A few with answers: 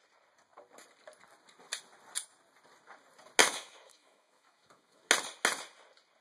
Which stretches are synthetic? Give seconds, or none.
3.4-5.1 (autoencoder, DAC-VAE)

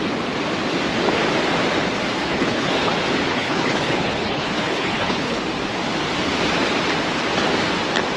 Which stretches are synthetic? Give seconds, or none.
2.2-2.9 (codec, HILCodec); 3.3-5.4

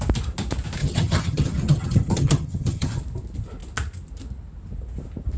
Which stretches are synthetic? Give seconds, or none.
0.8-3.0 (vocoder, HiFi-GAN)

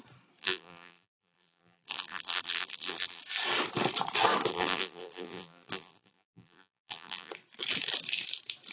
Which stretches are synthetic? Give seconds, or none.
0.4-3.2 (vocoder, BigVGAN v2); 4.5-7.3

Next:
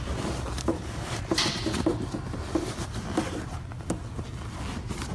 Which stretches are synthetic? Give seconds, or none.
0.7-1.2 (codec, DAC)